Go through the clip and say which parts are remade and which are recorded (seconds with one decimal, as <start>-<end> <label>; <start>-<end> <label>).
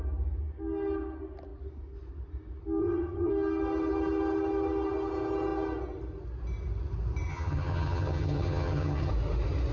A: 0.0-2.8 recorded; 2.8-3.3 remade; 3.3-7.3 recorded; 7.3-9.1 remade; 9.1-9.7 recorded